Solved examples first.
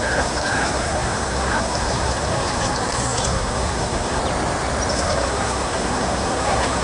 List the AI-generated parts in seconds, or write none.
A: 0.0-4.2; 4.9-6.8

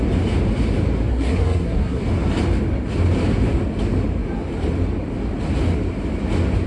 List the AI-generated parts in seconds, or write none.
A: 1.1-2.0

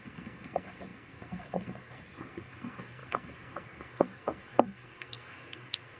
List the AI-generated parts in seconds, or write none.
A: 0.0-6.0